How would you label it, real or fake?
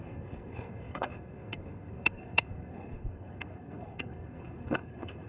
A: fake